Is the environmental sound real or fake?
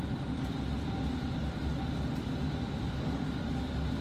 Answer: real